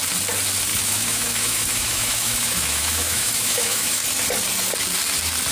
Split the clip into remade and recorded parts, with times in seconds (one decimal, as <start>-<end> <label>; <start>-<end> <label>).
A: 0.0-0.7 recorded; 0.7-4.0 remade; 4.0-5.5 recorded